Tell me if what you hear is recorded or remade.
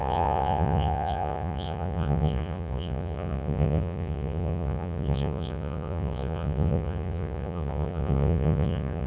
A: remade